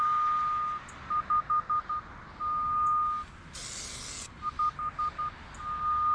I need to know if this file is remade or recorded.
recorded